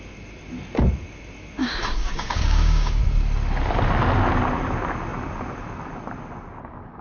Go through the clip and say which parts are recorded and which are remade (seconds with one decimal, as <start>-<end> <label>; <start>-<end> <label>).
0.0-1.6 recorded; 1.6-3.0 remade; 3.0-7.0 recorded

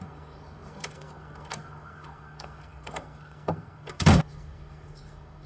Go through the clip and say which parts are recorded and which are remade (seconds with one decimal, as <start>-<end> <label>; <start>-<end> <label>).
0.0-5.5 remade

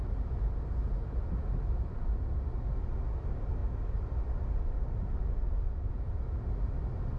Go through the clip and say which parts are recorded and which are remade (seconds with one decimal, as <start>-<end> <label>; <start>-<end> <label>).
0.0-7.2 recorded

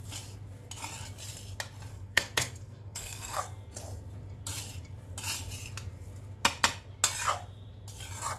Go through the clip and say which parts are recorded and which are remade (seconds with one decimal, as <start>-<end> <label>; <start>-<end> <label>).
0.0-1.9 recorded; 1.9-3.4 remade; 3.4-8.4 recorded

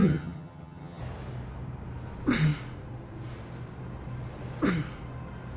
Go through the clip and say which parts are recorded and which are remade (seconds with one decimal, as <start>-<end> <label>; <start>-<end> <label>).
0.0-1.0 remade; 1.0-5.6 recorded

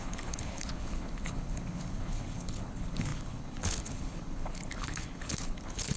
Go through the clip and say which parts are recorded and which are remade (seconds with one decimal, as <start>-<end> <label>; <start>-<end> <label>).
0.0-6.0 remade